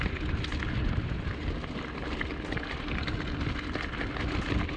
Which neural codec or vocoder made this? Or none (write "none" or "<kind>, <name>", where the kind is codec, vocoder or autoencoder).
none